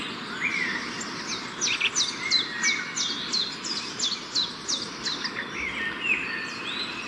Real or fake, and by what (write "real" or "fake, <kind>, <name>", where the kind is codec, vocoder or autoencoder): real